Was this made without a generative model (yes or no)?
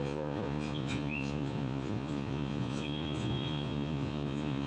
no